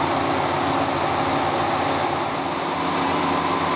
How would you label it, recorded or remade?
recorded